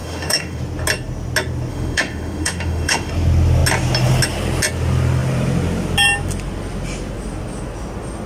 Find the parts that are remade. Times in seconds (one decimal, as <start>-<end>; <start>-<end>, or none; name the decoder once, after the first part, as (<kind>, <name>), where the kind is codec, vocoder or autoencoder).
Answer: 0.0-0.6 (autoencoder, DAC-VAE); 1.7-3.1